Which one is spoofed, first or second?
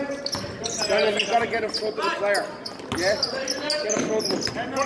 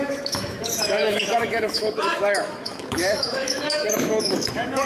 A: second